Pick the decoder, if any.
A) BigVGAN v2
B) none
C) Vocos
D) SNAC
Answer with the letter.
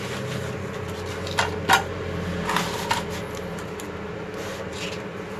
B